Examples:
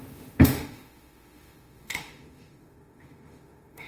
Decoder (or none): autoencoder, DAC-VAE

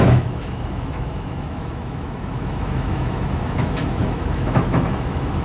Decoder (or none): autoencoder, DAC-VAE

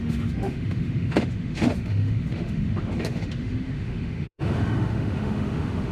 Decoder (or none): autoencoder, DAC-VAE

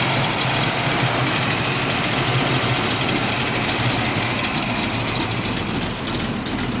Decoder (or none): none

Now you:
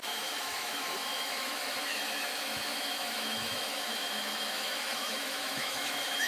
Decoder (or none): autoencoder, DAC-VAE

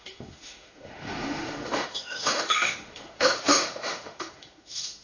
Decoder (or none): autoencoder, DAC-VAE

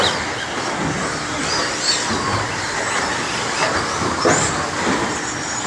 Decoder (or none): none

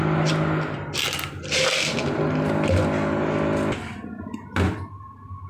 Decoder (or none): none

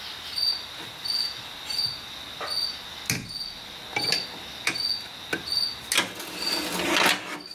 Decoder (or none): none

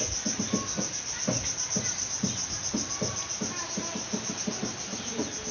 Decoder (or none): none